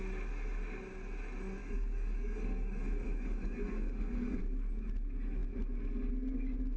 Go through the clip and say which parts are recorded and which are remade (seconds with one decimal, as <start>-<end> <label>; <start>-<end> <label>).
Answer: 0.0-1.6 recorded; 1.6-4.4 remade; 4.4-6.8 recorded